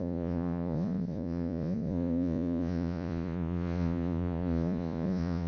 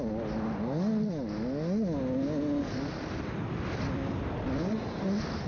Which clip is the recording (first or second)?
second